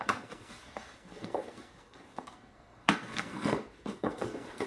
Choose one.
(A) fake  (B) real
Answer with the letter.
A